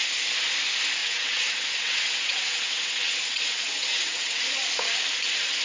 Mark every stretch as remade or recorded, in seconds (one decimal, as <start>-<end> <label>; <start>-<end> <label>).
0.0-1.0 recorded; 1.0-4.4 remade; 4.4-5.6 recorded